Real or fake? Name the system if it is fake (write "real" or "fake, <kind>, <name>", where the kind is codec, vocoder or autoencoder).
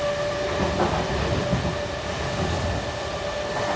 real